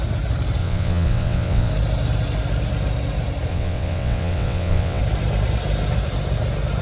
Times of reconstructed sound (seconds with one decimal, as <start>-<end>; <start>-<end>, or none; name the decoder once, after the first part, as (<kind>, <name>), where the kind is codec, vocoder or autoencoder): 0.6-1.7 (vocoder, WaveNeXt); 3.5-5.0